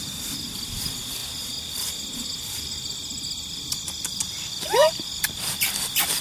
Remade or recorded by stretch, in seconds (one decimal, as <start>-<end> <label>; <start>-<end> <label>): 0.0-1.2 remade; 1.2-2.6 recorded; 2.6-6.2 remade